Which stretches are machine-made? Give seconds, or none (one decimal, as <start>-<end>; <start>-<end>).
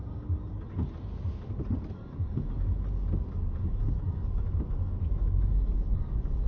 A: 3.9-6.5